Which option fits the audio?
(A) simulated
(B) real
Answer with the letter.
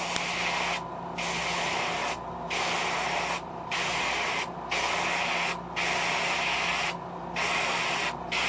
B